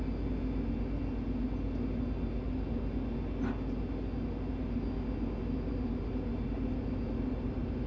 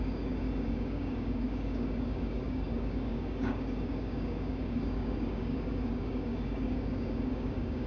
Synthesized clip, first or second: second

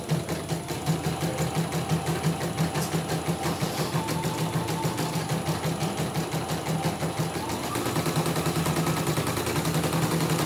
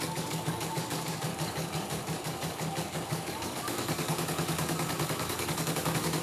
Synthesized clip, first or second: second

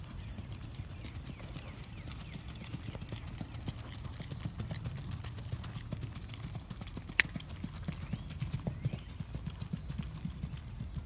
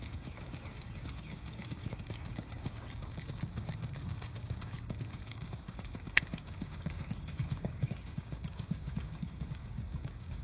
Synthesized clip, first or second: second